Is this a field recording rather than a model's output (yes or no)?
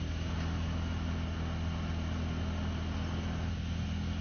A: yes